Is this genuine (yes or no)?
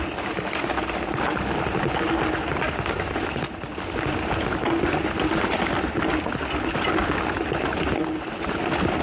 yes